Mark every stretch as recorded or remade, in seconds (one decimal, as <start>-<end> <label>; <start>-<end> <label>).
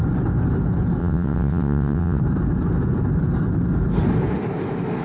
0.0-1.0 recorded; 1.0-2.2 remade; 2.2-5.0 recorded